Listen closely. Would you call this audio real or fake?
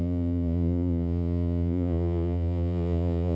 fake